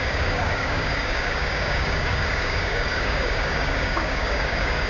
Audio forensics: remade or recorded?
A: remade